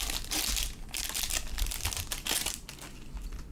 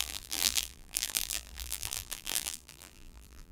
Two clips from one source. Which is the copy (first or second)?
second